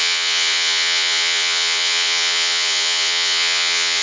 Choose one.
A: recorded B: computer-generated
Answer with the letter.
B